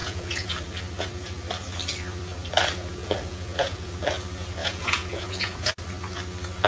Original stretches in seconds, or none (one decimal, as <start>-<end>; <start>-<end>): 0.5-3.0; 3.9-4.6; 5.7-6.7